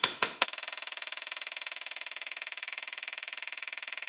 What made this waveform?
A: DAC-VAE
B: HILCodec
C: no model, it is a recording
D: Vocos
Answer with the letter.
A